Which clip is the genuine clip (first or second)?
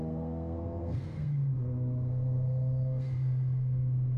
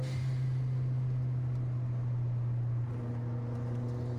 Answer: second